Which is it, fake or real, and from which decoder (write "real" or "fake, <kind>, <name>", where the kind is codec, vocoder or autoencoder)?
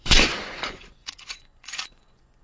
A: fake, vocoder, Vocos